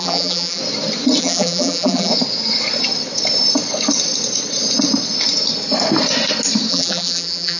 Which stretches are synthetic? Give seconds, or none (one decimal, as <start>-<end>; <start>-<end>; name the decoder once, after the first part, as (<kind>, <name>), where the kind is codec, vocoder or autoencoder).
0.0-0.6 (vocoder, BigVGAN v2); 1.2-2.1; 6.7-7.6

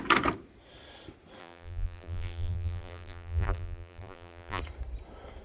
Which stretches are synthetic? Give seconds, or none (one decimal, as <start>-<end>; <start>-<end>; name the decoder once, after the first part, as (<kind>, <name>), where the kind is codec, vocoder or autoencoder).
1.4-4.6 (vocoder, BigVGAN v2)

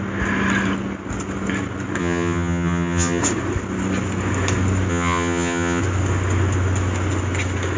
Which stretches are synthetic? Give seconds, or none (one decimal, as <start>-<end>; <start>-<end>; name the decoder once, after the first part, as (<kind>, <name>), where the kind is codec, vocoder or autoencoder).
2.0-3.2 (vocoder, HiFi-GAN); 4.9-5.8

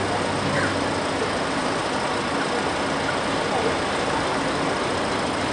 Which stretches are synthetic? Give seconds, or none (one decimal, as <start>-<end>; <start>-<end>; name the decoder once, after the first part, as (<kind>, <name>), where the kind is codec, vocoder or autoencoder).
none